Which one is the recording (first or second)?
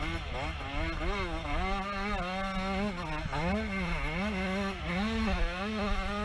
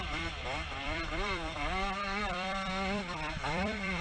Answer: first